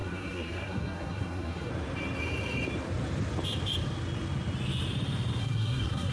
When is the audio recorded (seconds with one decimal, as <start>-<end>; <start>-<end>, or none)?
1.7-5.4